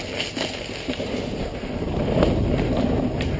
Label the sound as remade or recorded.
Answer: recorded